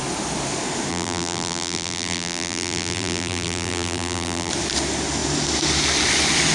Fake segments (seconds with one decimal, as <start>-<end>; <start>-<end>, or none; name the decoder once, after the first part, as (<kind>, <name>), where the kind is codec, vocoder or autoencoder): 0.9-4.5 (vocoder, BigVGAN v2)